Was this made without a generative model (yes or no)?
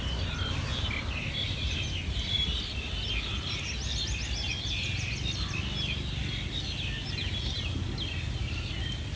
yes